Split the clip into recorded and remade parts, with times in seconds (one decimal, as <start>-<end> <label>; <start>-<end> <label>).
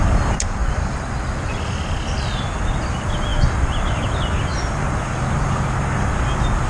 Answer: 0.0-6.7 recorded